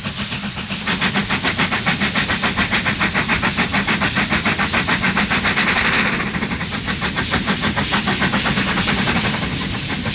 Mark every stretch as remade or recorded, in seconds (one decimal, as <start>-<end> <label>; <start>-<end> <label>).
0.0-10.1 recorded